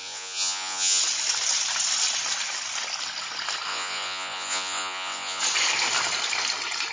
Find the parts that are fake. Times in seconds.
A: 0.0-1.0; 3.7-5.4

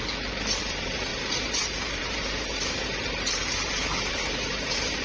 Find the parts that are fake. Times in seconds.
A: 0.6-5.0

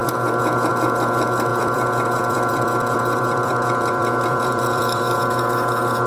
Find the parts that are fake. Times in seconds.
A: 0.0-0.7; 1.5-5.2

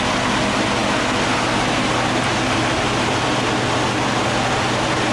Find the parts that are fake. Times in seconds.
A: none